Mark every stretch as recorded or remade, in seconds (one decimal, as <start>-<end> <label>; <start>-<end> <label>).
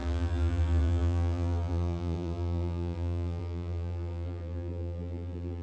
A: 0.0-5.6 remade